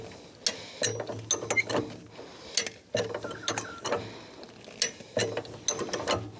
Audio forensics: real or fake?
real